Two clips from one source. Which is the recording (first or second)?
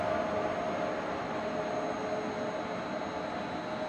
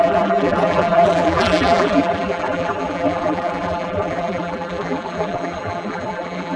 first